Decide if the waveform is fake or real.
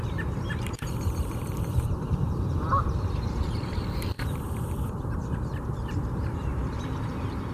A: fake